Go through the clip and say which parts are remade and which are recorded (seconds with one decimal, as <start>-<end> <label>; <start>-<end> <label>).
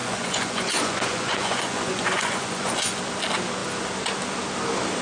0.0-3.0 remade; 3.0-5.0 recorded